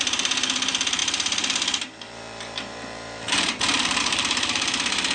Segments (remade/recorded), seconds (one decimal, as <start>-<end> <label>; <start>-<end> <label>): 0.0-5.1 remade